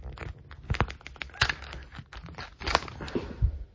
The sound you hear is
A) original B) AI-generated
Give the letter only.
A